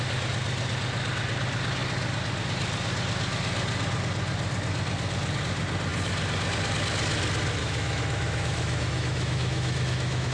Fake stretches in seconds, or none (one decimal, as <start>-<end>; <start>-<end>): 7.6-10.3